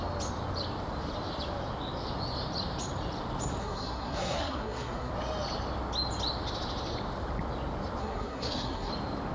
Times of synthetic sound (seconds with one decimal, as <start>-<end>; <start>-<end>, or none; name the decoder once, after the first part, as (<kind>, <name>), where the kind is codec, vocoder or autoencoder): 3.6-5.1 (codec, SNAC); 8.0-8.9